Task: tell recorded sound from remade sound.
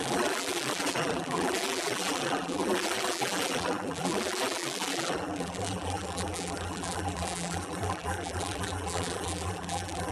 remade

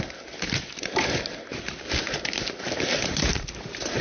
remade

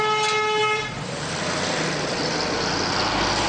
recorded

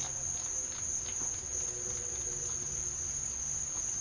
recorded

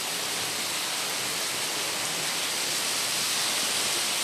recorded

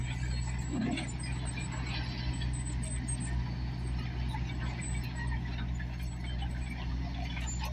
recorded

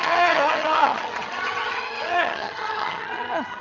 remade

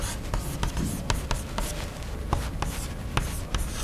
recorded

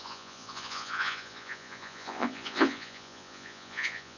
remade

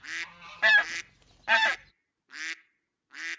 recorded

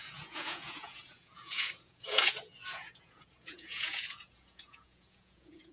remade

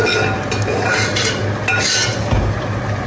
recorded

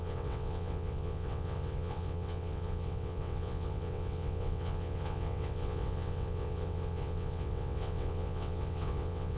remade